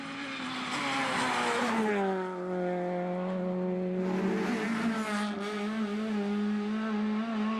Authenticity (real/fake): real